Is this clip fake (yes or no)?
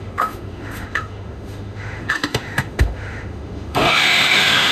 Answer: yes